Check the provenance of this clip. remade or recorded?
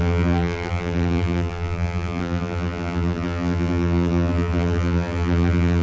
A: remade